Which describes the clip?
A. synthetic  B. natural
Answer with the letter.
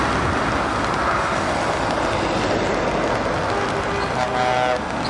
B